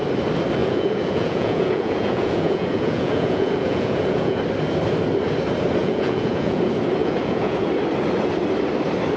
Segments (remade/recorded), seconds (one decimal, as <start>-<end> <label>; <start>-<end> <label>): 0.0-0.6 recorded; 0.6-4.4 remade; 4.4-5.8 recorded; 5.8-6.6 remade; 6.6-7.0 recorded; 7.0-7.7 remade; 7.7-9.2 recorded